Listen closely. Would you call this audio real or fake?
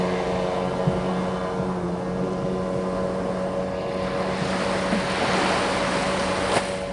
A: real